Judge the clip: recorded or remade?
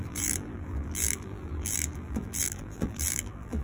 remade